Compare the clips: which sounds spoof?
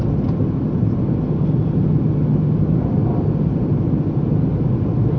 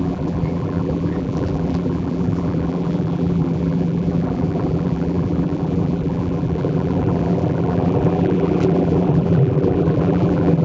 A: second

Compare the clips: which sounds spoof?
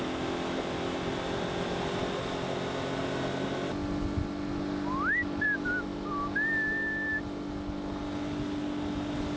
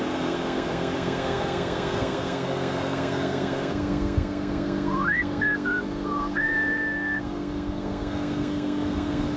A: second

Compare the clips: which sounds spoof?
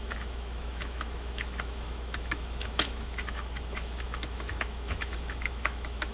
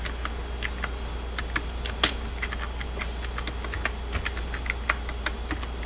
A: first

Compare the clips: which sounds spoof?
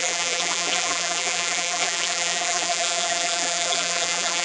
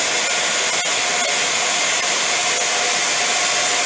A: first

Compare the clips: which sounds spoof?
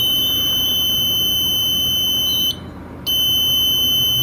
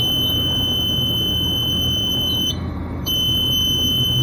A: second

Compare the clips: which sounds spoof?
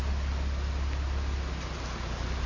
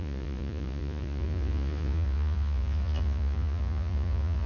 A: second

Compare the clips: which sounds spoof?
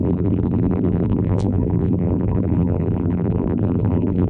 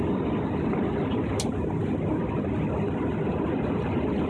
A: first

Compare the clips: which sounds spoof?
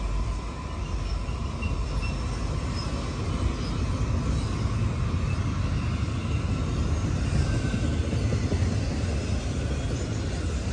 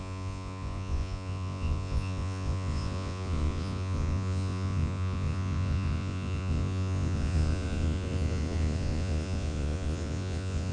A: second